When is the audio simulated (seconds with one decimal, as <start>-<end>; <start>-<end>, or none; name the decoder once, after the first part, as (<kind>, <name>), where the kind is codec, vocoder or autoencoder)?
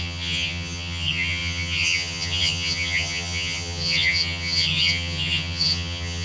0.0-6.2 (vocoder, HiFi-GAN)